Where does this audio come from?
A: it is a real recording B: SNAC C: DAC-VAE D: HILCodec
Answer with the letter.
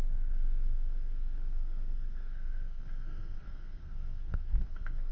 B